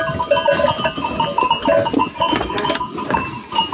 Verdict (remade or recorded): recorded